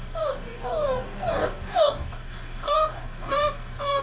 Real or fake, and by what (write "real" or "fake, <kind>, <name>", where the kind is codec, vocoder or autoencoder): fake, codec, DAC